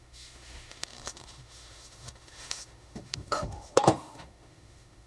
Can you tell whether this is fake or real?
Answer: fake